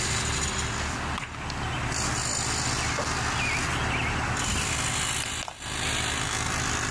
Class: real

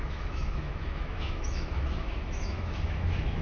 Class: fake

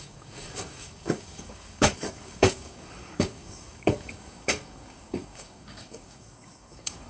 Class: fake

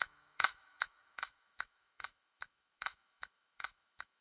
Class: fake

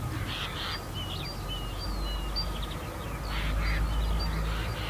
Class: real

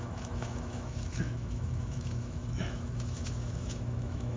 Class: fake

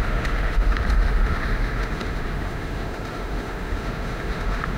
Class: fake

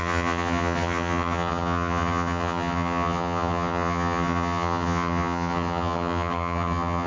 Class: fake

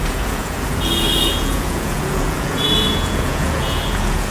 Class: fake